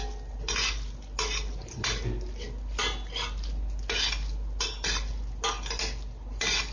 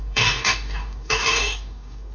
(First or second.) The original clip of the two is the first